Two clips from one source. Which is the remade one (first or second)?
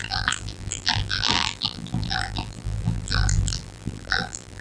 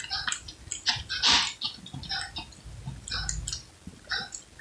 first